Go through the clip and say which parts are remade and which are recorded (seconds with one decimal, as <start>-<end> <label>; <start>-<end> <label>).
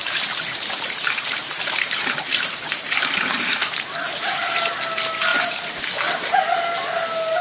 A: 0.0-4.4 remade; 4.4-5.3 recorded; 5.3-6.1 remade; 6.1-7.4 recorded